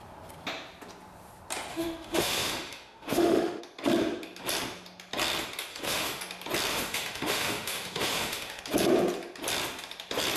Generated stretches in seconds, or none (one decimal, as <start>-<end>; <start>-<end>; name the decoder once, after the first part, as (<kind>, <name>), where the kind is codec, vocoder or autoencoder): 1.7-3.6 (autoencoder, DAC-VAE); 5.7-6.2; 6.7-8.6